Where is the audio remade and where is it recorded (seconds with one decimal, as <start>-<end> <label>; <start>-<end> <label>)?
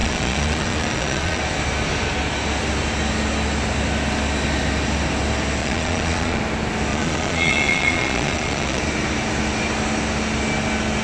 0.0-1.4 remade; 1.4-5.6 recorded; 5.6-6.4 remade; 6.4-6.9 recorded; 6.9-8.8 remade; 8.8-11.0 recorded